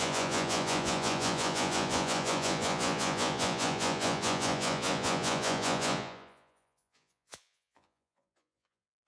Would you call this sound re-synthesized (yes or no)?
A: yes